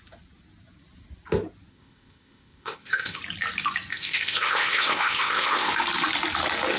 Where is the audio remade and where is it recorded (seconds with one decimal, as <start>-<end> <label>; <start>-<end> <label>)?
0.0-1.7 recorded; 1.7-3.2 remade; 3.2-3.9 recorded; 3.9-5.7 remade; 5.7-6.8 recorded